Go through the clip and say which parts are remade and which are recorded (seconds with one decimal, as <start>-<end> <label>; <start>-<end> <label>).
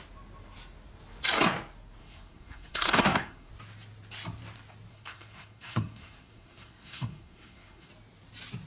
0.0-2.0 recorded; 2.0-3.5 remade; 3.5-4.9 recorded; 4.9-7.9 remade; 7.9-8.7 recorded